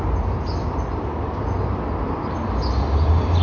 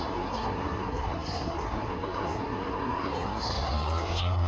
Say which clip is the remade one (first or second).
second